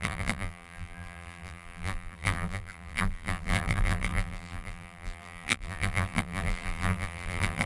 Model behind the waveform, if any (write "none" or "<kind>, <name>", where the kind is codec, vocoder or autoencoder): vocoder, BigVGAN v2